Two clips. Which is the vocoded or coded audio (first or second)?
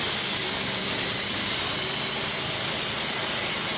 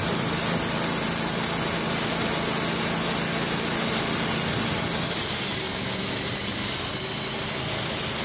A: first